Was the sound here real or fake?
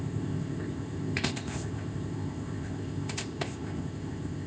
fake